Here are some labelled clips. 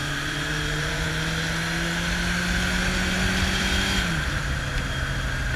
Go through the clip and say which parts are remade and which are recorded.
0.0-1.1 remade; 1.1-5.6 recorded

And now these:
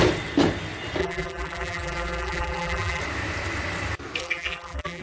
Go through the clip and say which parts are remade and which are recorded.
0.0-1.0 recorded; 1.0-3.0 remade; 3.0-4.2 recorded; 4.2-5.0 remade